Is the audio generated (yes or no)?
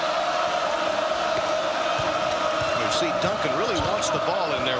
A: no